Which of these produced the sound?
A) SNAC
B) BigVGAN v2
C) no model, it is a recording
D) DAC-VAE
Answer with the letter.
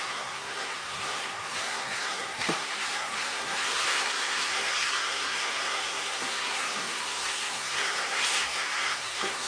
A